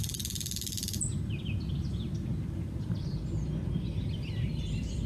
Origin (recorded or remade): remade